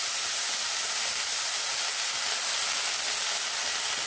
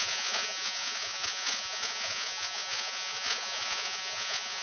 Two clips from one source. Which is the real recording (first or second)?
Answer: first